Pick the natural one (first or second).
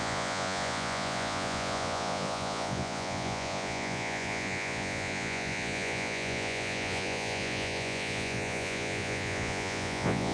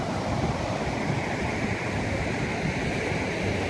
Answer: second